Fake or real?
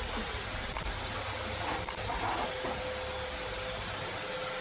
real